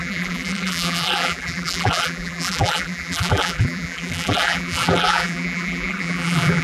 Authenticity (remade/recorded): remade